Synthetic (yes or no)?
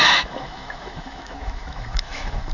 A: yes